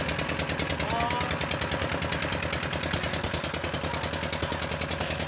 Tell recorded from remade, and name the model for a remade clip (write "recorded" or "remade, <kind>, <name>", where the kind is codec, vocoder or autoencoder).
recorded